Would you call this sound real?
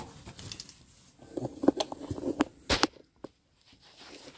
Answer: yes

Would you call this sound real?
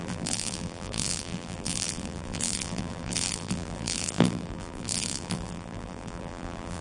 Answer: no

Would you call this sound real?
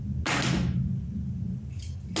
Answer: yes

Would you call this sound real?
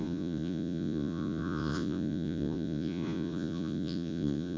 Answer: no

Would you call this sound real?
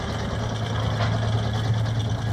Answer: yes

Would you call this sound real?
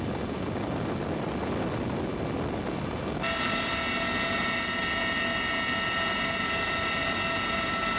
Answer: yes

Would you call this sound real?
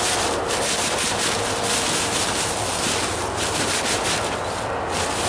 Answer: yes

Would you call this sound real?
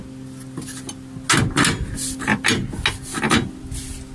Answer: yes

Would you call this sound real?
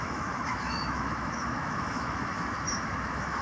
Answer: no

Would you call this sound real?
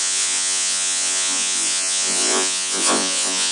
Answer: no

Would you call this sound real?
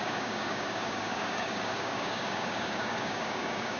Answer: no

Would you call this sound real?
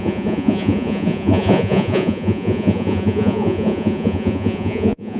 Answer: no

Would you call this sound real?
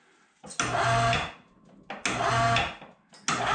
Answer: yes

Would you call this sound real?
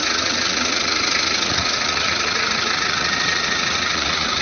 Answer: no